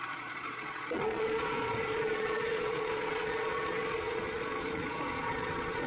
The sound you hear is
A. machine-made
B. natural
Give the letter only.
A